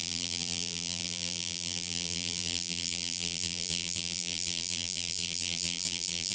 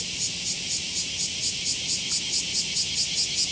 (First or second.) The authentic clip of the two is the second